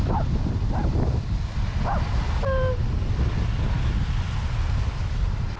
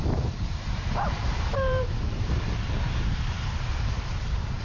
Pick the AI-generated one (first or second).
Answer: second